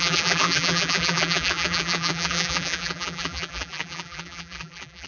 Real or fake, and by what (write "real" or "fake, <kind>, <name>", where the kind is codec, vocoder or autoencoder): fake, vocoder, BigVGAN v2